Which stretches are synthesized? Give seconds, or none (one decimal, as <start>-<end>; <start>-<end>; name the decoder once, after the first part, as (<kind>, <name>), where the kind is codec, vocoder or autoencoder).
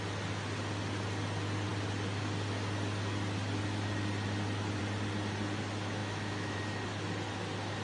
6.0-6.6 (autoencoder, DAC-VAE)